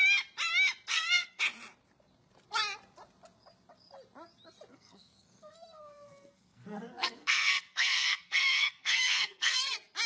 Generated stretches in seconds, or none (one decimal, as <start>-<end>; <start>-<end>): 0.9-1.4; 4.7-9.6